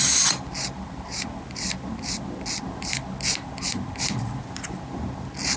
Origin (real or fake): real